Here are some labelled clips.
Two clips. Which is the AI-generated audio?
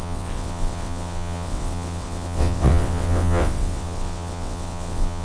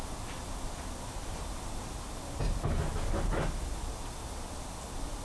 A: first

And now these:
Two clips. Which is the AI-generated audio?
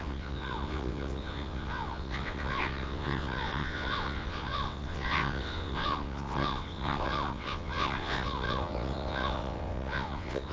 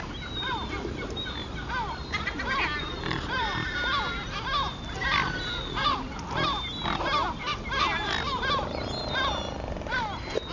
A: first